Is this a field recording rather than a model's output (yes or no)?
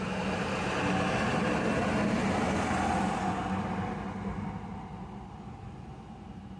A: yes